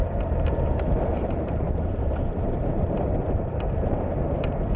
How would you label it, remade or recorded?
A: remade